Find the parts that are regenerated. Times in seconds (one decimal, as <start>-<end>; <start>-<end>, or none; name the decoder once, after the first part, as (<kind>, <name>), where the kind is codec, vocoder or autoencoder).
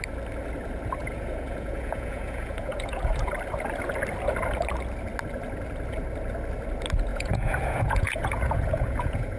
1.0-3.3 (vocoder, Vocos); 7.1-9.4